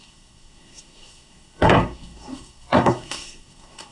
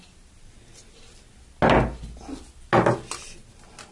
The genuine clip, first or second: second